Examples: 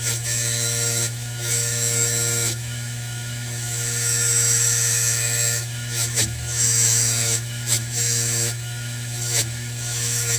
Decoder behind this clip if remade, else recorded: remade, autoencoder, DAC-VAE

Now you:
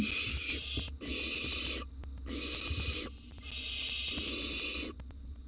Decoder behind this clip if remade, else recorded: recorded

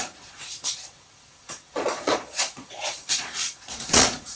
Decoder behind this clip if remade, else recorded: remade, vocoder, Vocos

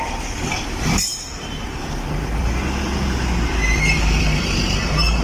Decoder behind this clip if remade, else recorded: remade, vocoder, BigVGAN v2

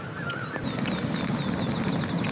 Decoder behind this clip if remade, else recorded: recorded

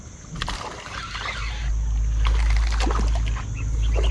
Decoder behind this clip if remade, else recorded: recorded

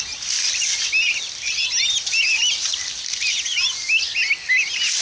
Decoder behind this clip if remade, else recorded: recorded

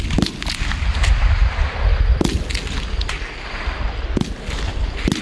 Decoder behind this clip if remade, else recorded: recorded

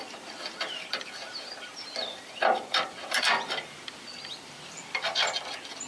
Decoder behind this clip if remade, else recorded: remade, vocoder, BigVGAN v2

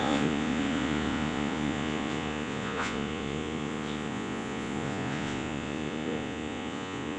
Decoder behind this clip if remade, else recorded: remade, vocoder, Vocos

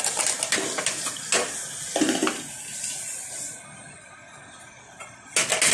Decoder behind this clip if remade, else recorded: recorded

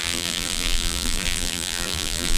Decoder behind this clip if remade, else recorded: remade, vocoder, BigVGAN v2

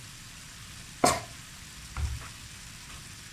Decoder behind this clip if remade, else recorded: recorded